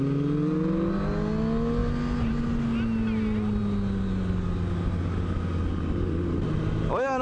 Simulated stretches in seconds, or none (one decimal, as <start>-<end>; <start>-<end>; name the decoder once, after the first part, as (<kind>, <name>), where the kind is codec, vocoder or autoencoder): none